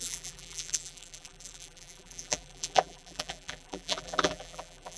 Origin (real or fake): fake